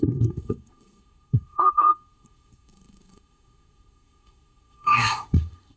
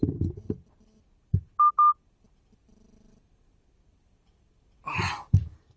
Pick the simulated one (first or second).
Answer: first